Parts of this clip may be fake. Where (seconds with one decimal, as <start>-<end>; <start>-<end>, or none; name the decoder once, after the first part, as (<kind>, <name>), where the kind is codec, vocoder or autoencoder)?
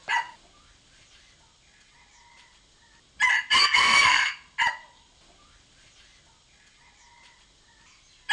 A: 3.6-4.3 (codec, SNAC)